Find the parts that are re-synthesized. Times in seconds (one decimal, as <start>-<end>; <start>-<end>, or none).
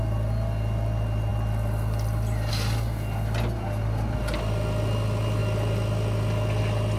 none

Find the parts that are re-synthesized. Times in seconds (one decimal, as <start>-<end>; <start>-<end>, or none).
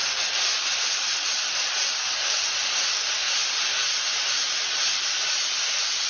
none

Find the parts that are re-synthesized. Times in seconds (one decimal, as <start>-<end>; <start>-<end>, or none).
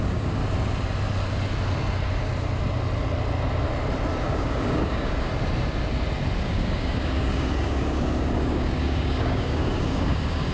0.0-0.4; 4.2-5.3; 6.4-10.5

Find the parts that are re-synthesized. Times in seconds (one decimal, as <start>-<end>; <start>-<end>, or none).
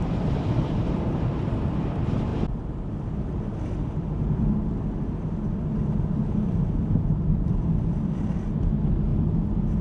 0.0-9.8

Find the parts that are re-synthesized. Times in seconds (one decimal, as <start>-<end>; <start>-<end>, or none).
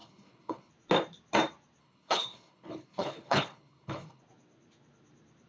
0.0-0.7; 1.8-4.2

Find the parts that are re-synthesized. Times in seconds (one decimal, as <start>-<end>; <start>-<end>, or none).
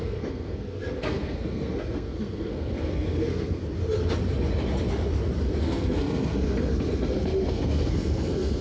0.0-3.6; 5.6-8.6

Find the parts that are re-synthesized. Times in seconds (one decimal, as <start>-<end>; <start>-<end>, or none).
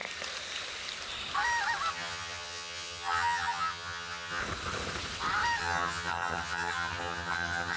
1.9-4.4; 5.6-7.8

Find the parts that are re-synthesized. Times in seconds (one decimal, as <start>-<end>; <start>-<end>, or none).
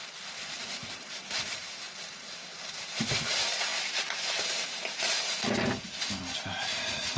1.1-3.7; 6.0-7.2